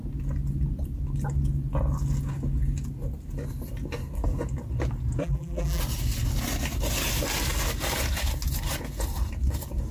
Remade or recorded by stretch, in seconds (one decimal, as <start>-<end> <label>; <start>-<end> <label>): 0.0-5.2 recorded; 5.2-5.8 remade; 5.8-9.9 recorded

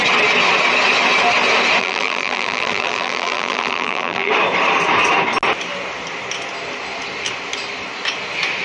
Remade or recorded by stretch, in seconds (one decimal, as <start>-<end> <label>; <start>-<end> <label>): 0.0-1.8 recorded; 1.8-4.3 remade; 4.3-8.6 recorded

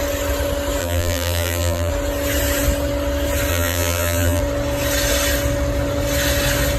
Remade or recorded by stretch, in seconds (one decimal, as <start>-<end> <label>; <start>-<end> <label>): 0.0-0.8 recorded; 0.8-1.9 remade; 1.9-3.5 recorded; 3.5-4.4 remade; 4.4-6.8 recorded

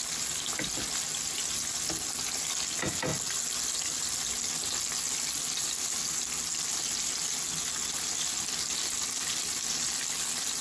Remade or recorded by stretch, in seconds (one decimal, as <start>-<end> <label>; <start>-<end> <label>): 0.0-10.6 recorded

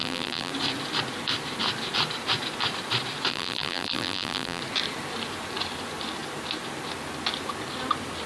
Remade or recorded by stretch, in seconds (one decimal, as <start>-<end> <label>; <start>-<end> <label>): 0.0-0.5 remade; 0.5-3.3 recorded; 3.3-4.6 remade; 4.6-8.3 recorded

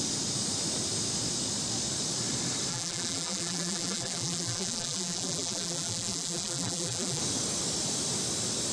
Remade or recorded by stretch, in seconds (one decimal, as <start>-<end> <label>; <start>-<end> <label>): 0.0-2.7 recorded; 2.7-7.2 remade; 7.2-8.7 recorded

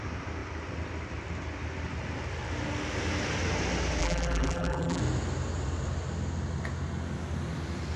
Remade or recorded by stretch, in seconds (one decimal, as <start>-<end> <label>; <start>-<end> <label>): 0.0-4.0 recorded; 4.0-5.0 remade; 5.0-8.0 recorded